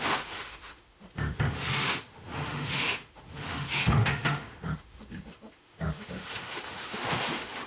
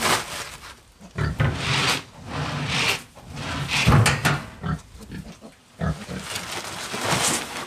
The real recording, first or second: second